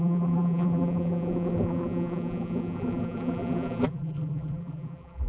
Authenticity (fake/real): fake